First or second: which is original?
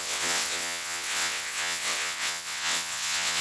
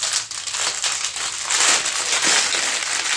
second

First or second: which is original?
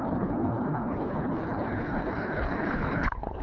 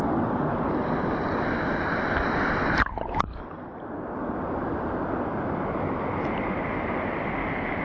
second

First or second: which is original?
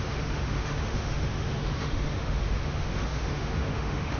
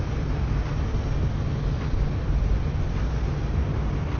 second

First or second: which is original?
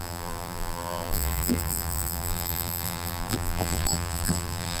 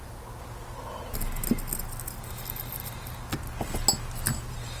second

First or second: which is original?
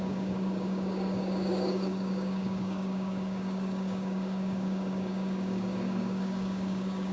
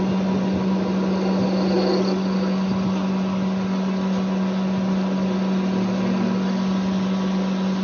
second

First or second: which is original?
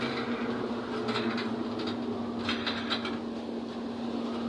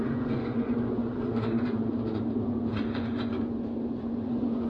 first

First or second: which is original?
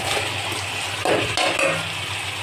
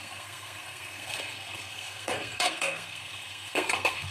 first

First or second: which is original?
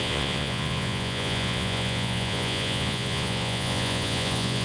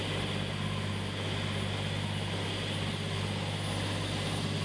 second